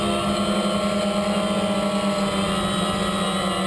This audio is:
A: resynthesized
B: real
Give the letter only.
B